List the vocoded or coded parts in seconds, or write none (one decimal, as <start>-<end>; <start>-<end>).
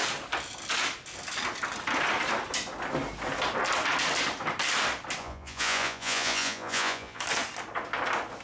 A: 5.2-7.2